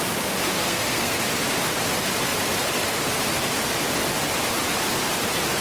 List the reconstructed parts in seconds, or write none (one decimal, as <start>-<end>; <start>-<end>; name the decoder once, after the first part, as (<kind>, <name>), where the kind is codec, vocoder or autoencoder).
0.6-1.2 (codec, SNAC)